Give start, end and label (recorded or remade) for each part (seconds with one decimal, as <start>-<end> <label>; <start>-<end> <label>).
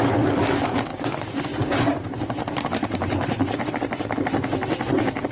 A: 0.0-0.9 recorded; 0.9-3.7 remade; 3.7-5.3 recorded